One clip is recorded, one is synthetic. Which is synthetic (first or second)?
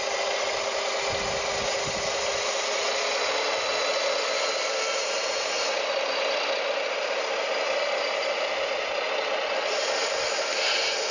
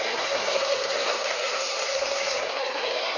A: second